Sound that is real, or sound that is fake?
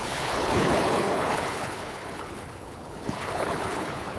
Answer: fake